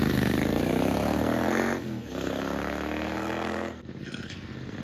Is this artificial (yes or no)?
yes